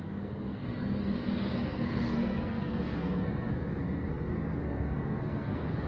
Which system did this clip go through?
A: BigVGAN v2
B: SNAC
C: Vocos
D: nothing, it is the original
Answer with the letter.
B